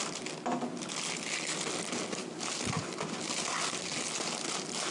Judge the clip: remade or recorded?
recorded